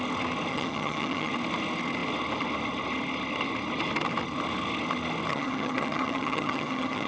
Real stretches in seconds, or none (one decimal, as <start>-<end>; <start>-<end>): 0.0-0.5; 1.3-5.3